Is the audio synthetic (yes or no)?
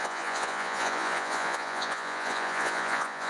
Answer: yes